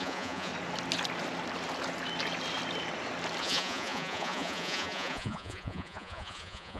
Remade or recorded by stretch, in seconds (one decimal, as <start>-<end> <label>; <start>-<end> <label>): 0.0-0.5 remade; 0.5-3.4 recorded; 3.4-6.8 remade